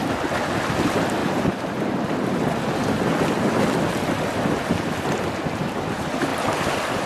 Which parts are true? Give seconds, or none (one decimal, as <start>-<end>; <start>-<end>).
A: 0.0-7.1